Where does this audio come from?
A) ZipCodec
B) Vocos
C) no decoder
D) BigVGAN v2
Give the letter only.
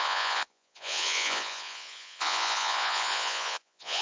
B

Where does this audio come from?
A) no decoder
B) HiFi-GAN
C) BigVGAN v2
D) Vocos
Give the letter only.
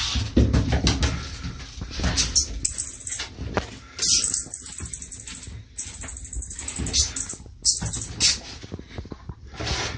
A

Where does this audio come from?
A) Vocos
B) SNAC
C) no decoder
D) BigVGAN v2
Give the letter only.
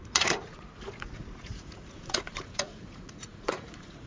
A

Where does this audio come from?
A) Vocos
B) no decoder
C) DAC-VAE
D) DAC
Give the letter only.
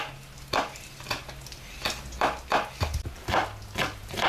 B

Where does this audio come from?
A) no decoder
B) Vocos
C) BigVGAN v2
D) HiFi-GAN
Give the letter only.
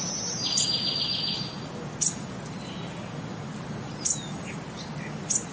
A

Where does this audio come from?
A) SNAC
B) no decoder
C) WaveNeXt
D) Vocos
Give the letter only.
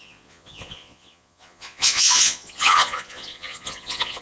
D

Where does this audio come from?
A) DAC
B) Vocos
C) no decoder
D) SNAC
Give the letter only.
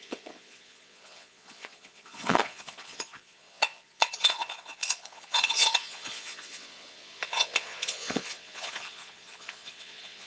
B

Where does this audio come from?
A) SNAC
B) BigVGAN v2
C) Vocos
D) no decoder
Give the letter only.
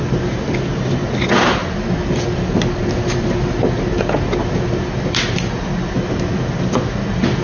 D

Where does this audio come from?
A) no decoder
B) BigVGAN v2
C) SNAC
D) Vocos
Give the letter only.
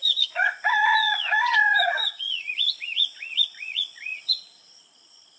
D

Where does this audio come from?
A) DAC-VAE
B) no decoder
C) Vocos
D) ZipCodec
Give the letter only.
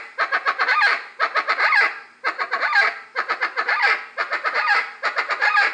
B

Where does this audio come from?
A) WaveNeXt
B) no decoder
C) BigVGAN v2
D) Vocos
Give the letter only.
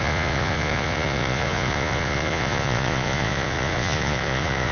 D